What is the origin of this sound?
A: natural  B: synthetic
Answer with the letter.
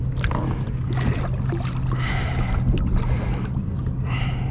A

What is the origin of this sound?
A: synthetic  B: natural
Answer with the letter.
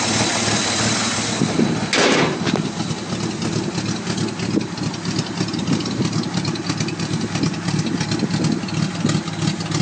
B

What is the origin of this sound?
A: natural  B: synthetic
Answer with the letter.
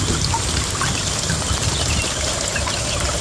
A